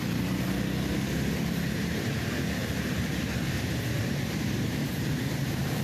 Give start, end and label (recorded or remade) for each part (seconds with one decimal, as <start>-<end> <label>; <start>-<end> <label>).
0.0-5.8 remade